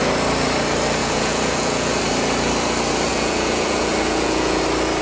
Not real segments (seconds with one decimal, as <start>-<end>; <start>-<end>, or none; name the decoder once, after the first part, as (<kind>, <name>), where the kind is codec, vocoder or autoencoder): 1.0-2.0 (vocoder, Vocos); 3.1-4.6